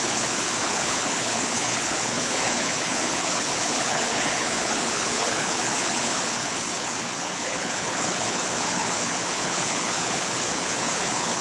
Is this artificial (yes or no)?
yes